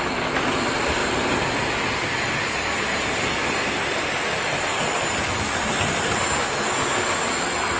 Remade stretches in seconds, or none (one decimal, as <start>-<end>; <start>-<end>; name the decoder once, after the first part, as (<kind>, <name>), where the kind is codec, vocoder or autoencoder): none